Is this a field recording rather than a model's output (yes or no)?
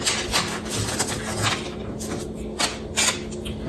yes